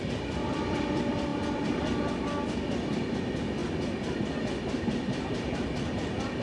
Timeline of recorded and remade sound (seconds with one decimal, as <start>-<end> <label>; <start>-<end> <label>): 0.0-6.4 recorded